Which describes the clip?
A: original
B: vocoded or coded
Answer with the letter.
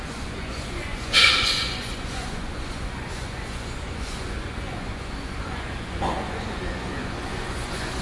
B